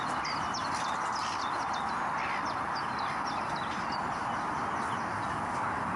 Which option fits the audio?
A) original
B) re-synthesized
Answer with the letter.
A